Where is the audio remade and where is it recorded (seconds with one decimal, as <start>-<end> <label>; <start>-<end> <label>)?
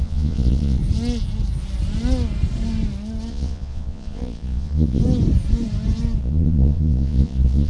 0.0-0.8 remade; 0.8-3.3 recorded; 3.3-5.0 remade; 5.0-6.2 recorded; 6.2-7.7 remade